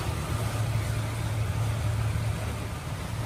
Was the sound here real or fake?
real